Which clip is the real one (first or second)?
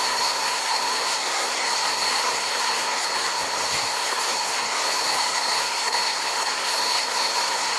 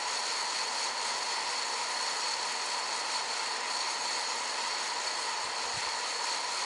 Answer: second